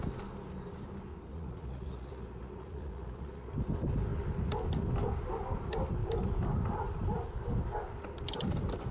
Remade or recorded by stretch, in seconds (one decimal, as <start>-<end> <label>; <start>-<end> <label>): 0.0-1.3 recorded; 1.3-3.5 remade; 3.5-8.9 recorded